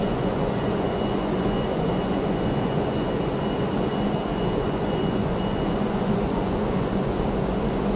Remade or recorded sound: remade